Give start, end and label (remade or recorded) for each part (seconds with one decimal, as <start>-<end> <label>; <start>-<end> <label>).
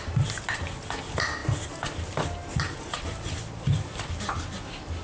0.0-5.0 recorded